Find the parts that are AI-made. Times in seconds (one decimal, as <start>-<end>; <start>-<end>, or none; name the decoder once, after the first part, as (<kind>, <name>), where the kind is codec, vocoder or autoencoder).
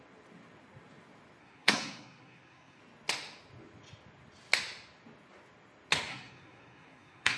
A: 1.4-2.8 (codec, SNAC); 6.1-7.4